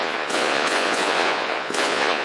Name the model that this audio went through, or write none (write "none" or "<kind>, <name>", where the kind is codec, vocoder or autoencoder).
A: vocoder, Vocos